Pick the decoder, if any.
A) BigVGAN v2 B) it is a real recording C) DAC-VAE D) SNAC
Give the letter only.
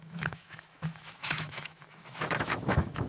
C